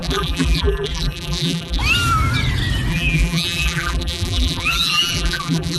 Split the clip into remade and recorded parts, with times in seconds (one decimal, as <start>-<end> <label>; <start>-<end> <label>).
0.0-1.8 remade; 1.8-2.9 recorded; 2.9-5.8 remade